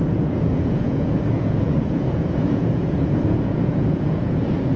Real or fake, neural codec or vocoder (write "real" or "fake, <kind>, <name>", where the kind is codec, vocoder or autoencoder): fake, vocoder, Vocos